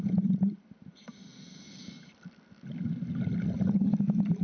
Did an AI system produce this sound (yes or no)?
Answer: no